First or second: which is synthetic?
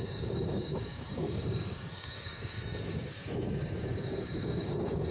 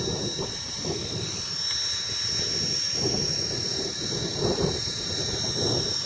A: first